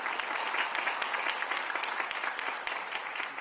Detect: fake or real real